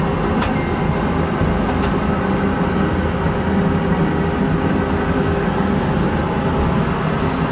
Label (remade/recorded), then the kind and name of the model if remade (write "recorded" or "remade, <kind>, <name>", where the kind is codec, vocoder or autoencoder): recorded